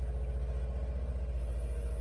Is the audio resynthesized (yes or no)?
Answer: no